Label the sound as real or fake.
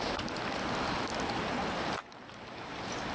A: real